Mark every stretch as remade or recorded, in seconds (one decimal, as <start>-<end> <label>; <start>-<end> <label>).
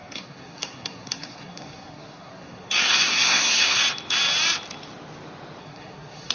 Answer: 0.0-3.8 remade; 3.8-5.6 recorded; 5.6-6.3 remade